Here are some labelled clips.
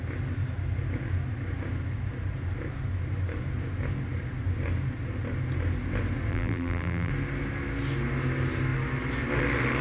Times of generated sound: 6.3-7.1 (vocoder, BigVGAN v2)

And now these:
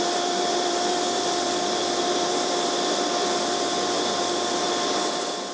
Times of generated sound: 0.0-5.5 (vocoder, BigVGAN v2)